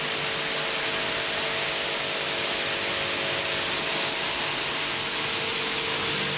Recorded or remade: recorded